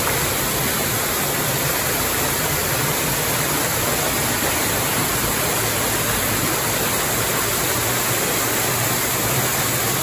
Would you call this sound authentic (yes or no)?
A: yes